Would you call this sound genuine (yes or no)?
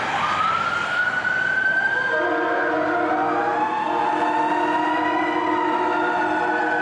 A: yes